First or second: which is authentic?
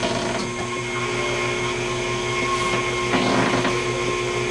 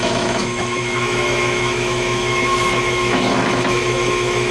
first